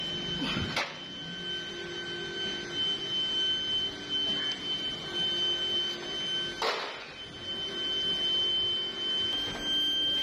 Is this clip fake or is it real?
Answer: real